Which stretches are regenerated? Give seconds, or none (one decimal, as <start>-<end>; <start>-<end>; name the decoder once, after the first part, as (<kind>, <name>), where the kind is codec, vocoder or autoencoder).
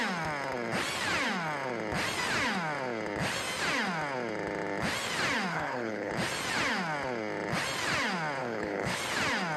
5.5-6.1 (codec, HILCodec); 8.4-9.0